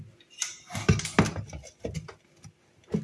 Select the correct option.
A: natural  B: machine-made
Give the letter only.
A